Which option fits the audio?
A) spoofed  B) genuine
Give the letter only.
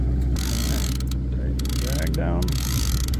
B